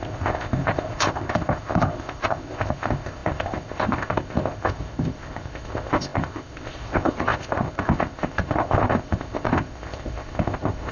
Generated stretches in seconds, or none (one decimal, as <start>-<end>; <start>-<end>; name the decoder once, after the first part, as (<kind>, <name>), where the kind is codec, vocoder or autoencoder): 0.0-10.9 (codec, ZipCodec)